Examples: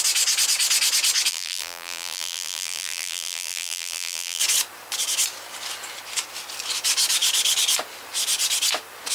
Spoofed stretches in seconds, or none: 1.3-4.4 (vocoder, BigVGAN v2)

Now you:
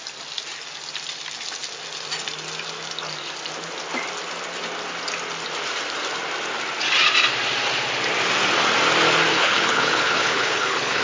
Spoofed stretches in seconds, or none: 9.3-11.0 (codec, HILCodec)

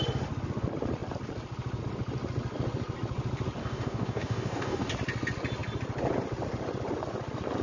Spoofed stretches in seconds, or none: 3.6-4.9 (codec, DAC)

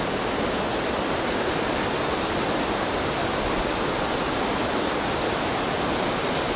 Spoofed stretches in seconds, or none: none

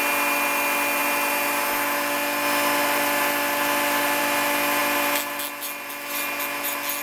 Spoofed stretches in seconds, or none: none

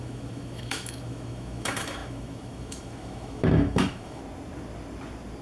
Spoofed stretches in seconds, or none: 0.0-4.2 (autoencoder, DAC-VAE)